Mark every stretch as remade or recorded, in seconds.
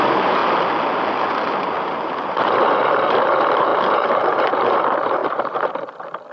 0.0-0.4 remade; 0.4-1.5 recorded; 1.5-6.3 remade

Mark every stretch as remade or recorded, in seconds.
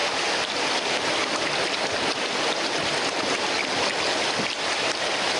0.0-5.4 recorded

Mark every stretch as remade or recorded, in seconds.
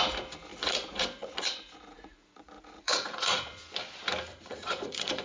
0.0-0.5 recorded; 0.5-3.6 remade; 3.6-4.3 recorded; 4.3-5.2 remade